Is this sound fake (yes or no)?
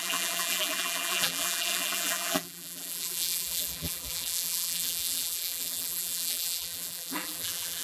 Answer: yes